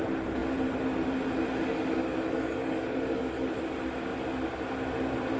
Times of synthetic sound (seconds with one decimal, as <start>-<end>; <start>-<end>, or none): 2.0-3.6